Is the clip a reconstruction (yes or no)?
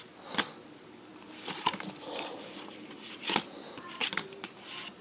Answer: no